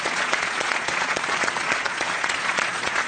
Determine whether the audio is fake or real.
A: fake